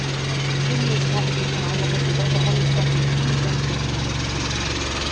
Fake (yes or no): no